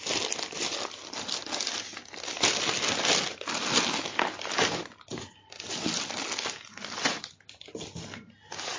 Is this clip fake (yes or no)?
no